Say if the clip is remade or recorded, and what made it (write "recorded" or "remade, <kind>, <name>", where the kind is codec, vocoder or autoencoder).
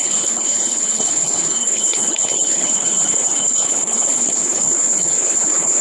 remade, codec, HILCodec